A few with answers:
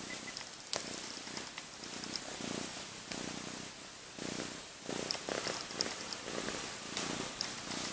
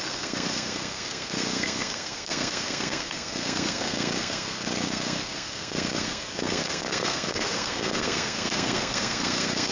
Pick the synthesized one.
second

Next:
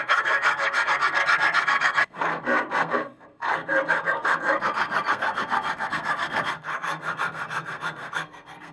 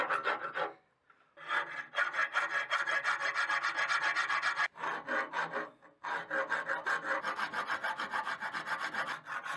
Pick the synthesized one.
first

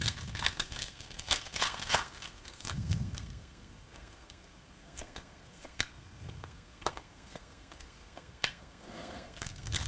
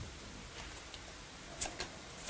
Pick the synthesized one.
first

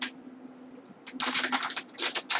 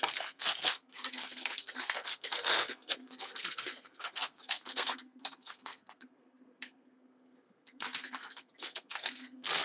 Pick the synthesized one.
second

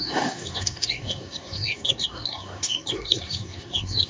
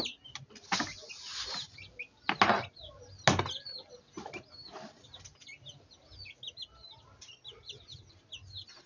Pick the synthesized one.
first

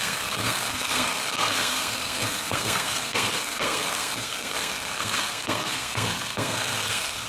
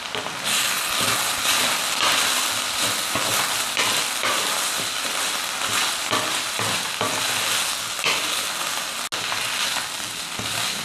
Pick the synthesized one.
first